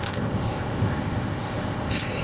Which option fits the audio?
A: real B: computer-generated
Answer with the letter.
B